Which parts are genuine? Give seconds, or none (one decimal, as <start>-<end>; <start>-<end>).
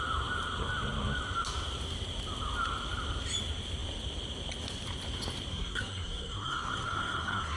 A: 0.0-5.5